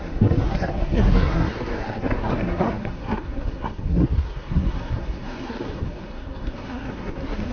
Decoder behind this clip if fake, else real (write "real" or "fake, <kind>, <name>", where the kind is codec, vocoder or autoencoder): fake, codec, SNAC